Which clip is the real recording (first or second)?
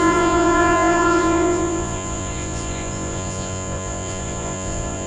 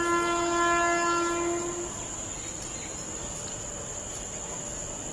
second